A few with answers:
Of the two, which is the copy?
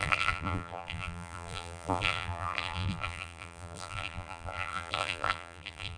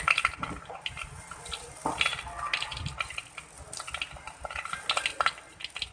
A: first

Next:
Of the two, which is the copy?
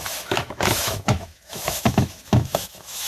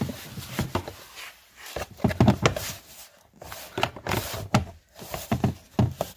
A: first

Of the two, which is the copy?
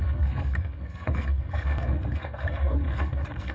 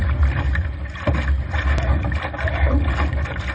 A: first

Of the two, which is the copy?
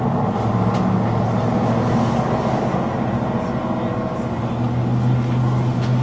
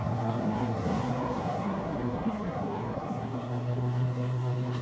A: second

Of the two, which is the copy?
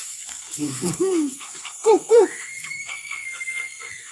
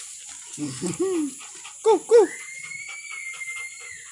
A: first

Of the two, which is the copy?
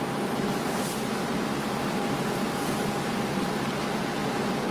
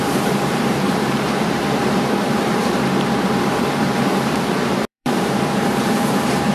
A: second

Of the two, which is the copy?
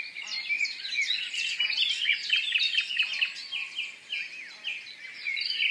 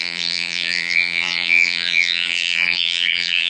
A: second